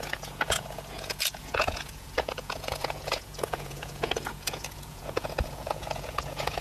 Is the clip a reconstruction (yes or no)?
yes